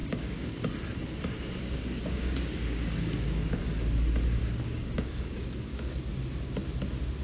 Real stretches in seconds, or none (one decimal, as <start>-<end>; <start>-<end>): 0.5-1.6; 3.6-4.4; 5.9-7.2